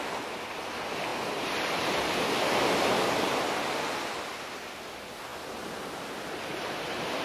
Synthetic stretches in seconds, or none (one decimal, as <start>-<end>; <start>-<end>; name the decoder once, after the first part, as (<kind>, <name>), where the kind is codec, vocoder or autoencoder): none

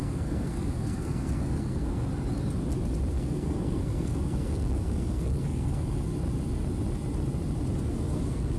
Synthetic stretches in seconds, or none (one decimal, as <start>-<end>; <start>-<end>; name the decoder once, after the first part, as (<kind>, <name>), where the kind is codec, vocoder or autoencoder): 0.0-2.1 (codec, SNAC); 3.1-6.1; 7.9-8.6

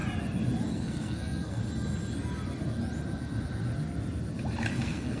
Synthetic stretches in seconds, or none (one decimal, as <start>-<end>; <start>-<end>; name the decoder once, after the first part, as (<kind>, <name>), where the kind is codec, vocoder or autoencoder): 0.7-1.6 (codec, SNAC); 4.7-5.2

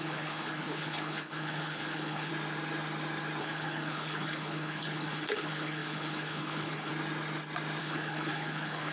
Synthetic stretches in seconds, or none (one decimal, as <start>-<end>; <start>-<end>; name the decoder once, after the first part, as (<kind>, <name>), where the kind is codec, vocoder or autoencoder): 0.0-2.3 (codec, HILCodec); 3.4-6.9; 7.8-8.9

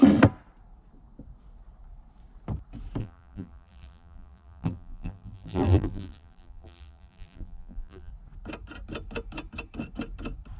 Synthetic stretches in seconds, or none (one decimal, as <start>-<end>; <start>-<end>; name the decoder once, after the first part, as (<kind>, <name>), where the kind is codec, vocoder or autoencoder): 3.0-8.1 (vocoder, BigVGAN v2)

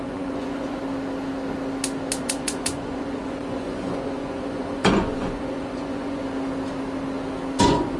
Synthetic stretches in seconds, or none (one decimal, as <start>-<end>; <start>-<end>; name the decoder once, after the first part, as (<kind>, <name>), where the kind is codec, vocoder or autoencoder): 0.0-0.8 (vocoder, Vocos); 2.2-6.2; 7.6-8.0

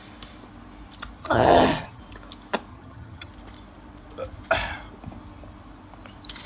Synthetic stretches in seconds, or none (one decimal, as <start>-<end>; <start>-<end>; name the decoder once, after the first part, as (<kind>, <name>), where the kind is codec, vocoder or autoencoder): 1.2-2.0 (vocoder, HiFi-GAN); 2.7-3.3